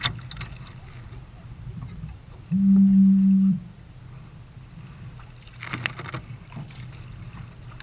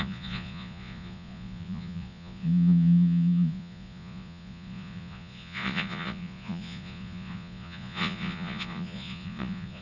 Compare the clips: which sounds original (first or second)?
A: first